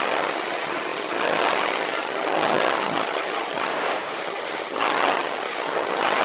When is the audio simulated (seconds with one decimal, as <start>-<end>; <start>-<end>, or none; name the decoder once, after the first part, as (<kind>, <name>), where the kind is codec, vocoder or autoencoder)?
0.0-3.7 (vocoder, HiFi-GAN); 4.2-6.2